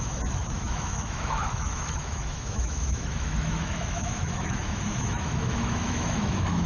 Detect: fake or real fake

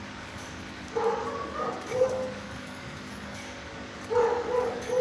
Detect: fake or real fake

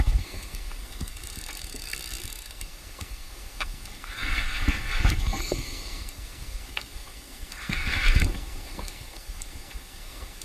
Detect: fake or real fake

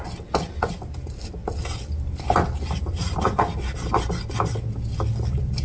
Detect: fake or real real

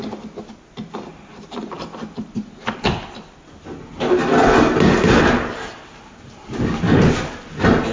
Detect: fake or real real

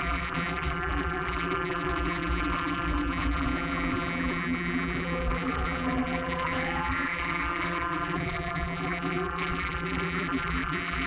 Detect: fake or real fake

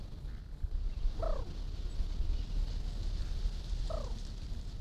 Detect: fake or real real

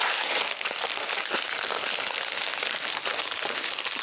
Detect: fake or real real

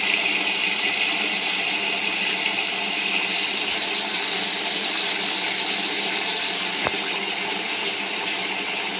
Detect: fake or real real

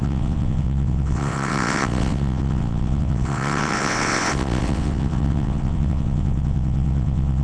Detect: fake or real fake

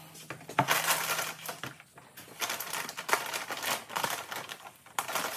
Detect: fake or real real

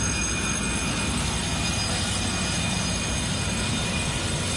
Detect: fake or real real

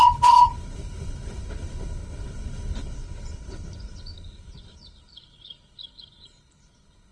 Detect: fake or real fake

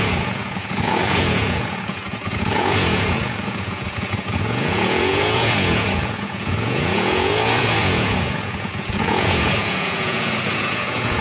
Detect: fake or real fake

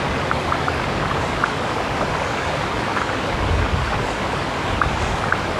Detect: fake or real fake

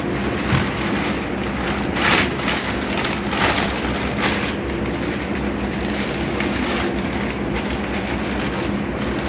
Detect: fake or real real